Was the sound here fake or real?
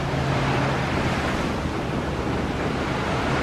real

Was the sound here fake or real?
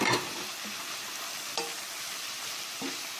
real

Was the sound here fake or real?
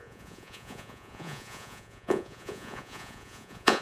fake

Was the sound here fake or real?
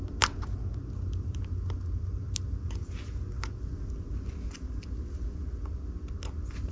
real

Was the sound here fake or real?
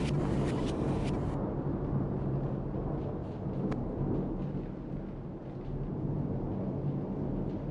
real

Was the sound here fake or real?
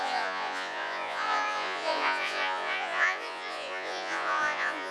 fake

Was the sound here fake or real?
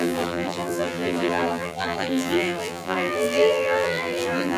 fake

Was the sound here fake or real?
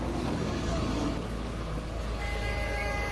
fake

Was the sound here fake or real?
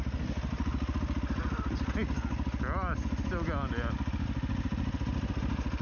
real